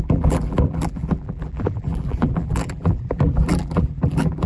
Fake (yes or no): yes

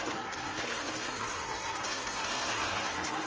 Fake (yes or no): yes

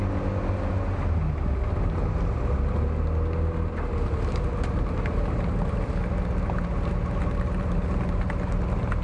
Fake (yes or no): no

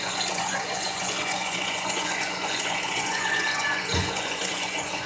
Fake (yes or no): yes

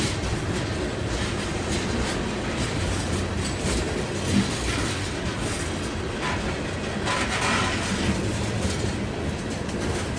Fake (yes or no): no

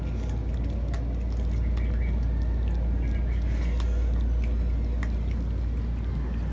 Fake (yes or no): no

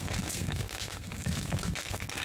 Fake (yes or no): yes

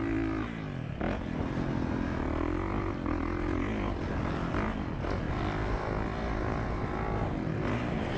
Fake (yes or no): no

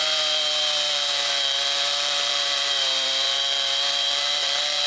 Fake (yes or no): yes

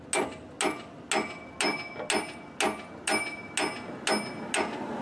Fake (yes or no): no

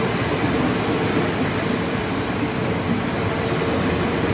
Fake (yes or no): no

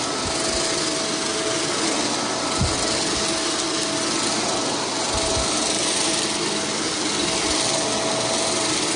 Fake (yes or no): no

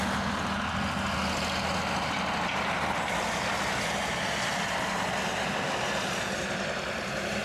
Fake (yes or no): no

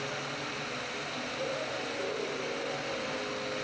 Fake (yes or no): no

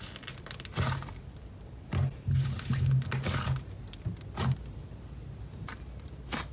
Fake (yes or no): no